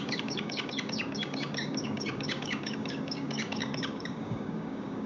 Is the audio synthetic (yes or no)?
yes